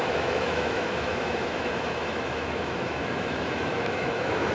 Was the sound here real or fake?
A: fake